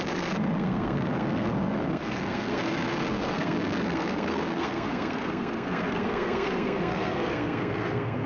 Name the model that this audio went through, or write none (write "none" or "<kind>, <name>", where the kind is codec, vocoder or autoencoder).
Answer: codec, SNAC